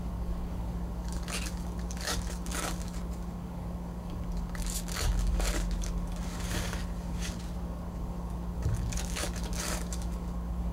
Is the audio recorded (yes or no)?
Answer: no